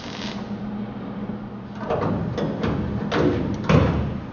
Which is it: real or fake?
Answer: real